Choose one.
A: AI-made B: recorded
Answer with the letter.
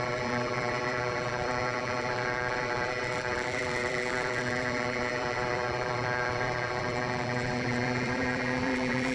A